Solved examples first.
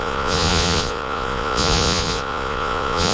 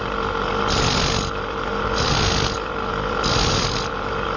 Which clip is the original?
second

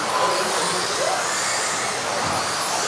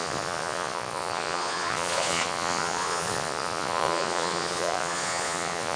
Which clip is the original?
first